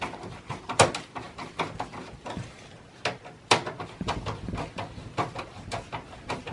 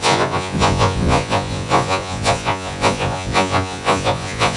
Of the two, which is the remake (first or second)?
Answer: second